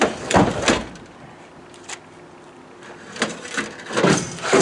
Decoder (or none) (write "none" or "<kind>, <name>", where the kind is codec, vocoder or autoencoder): none